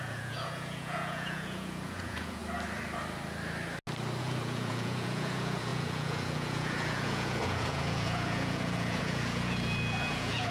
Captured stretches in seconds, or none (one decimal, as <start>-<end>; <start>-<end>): 2.4-4.2